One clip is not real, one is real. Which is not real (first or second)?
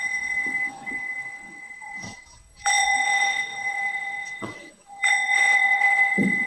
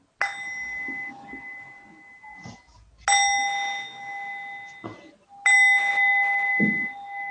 first